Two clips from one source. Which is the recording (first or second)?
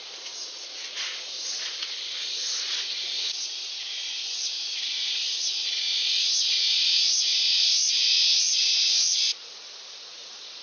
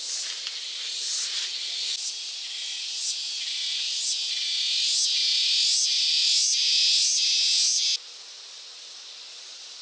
second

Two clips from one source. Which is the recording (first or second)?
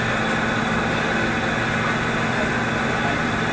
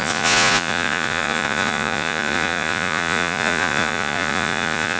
first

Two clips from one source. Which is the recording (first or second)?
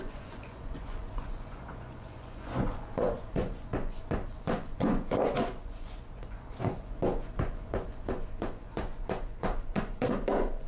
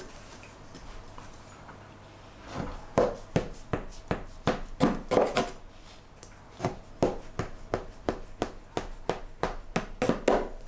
second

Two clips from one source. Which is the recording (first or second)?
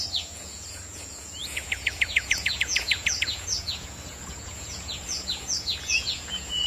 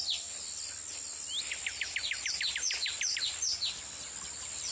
second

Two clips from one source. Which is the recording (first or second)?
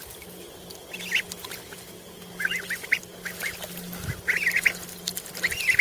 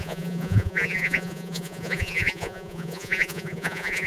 first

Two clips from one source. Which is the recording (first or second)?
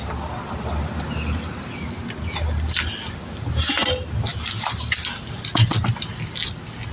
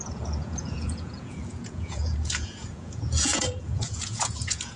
first